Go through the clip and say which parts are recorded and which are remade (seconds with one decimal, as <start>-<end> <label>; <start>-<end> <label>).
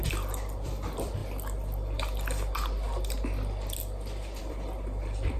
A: 0.0-1.2 remade; 1.2-4.4 recorded; 4.4-5.4 remade